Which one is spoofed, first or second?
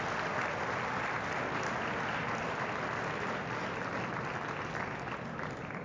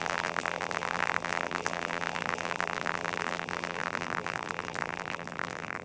second